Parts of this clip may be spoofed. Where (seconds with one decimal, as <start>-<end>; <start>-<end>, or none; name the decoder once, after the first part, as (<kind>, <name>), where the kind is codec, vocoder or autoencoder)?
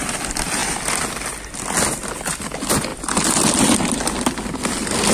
none